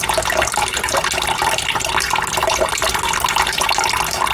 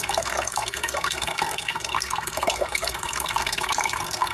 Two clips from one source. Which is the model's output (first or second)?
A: second